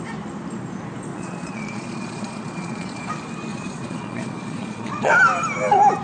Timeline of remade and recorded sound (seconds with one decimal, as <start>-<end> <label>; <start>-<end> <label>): 0.0-1.1 recorded; 1.1-3.1 remade; 3.1-3.5 recorded; 3.5-5.1 remade; 5.1-6.0 recorded